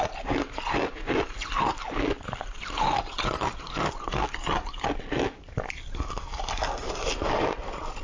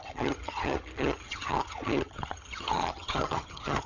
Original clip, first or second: first